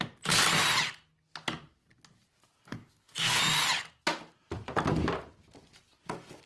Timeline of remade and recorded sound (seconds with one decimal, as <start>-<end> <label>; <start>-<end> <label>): 0.0-2.7 recorded; 2.7-3.4 remade; 3.4-6.5 recorded